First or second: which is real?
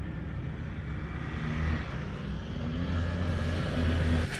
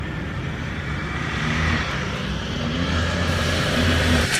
first